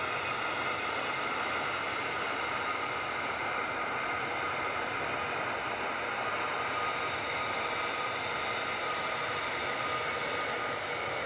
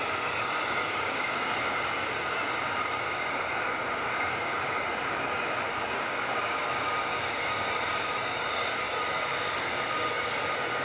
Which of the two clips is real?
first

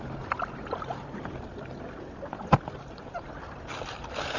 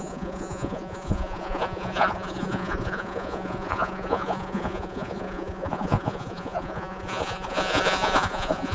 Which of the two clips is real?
first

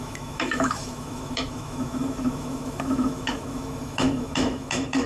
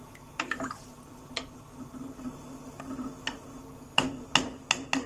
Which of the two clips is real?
second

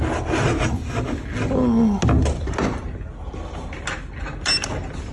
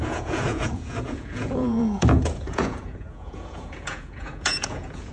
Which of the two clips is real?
first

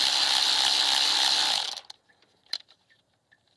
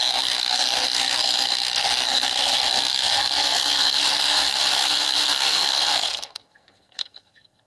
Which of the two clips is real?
first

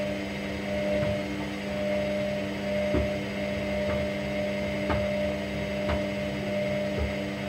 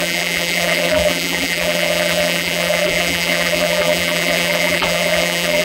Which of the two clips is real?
first